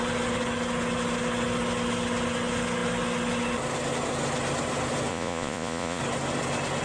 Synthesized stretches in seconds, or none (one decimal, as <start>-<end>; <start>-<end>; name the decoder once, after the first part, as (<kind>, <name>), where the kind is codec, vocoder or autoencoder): 5.1-6.0 (vocoder, Vocos)